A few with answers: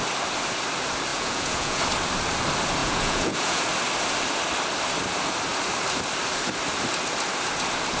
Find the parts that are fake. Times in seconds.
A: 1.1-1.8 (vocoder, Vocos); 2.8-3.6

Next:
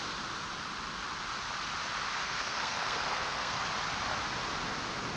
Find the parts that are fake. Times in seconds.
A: 2.2-3.6 (codec, SNAC)

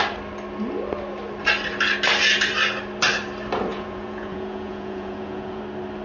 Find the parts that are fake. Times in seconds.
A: 3.7-5.6 (vocoder, Vocos)

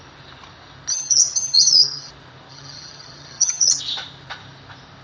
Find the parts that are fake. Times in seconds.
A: 0.9-2.1 (vocoder, HiFi-GAN); 2.5-3.8